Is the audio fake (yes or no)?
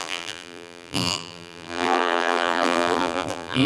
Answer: yes